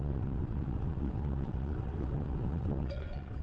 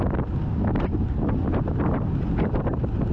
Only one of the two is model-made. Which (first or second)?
first